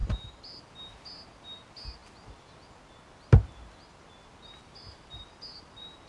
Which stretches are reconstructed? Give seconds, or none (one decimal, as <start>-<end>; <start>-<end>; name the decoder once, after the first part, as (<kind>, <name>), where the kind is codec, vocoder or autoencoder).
0.0-0.6 (vocoder, BigVGAN v2)